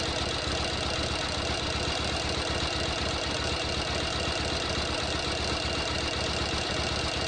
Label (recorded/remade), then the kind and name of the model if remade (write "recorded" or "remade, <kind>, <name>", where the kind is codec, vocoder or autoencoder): recorded